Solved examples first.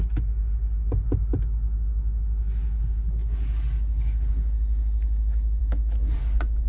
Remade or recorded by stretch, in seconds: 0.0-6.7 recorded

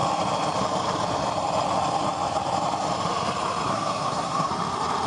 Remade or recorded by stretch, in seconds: 0.0-3.7 recorded; 3.7-4.5 remade; 4.5-5.1 recorded

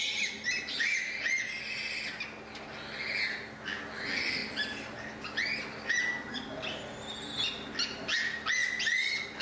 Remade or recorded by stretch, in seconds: 0.0-9.4 recorded

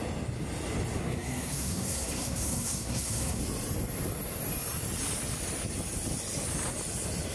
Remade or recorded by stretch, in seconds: 0.0-1.0 recorded; 1.0-3.4 remade; 3.4-7.3 recorded